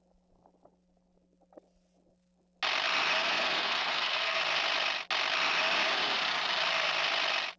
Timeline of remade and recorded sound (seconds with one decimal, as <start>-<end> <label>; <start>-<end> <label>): 0.0-3.2 recorded; 3.2-4.4 remade; 4.4-7.6 recorded